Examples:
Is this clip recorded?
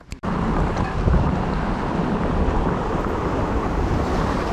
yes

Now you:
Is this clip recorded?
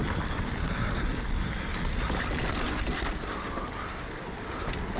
yes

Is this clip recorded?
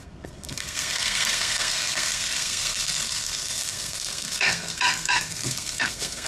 no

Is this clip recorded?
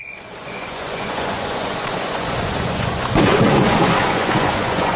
no